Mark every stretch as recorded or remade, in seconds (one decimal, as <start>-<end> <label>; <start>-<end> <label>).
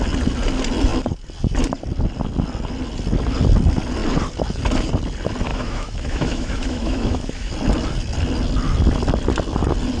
0.0-5.5 recorded; 5.5-7.5 remade; 7.5-10.0 recorded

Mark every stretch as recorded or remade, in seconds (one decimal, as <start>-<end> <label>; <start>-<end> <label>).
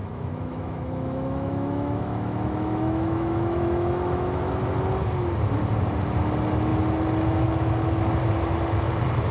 0.0-4.4 remade; 4.4-9.3 recorded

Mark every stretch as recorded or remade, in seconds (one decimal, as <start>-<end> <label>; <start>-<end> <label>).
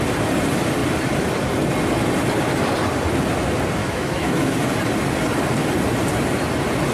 0.0-3.8 recorded; 3.8-4.5 remade; 4.5-6.9 recorded